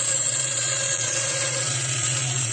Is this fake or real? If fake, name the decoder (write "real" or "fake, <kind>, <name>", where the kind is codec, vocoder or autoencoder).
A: fake, vocoder, Vocos